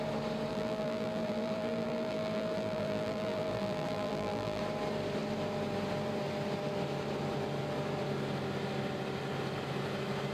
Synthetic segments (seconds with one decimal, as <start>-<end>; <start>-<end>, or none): 0.5-4.6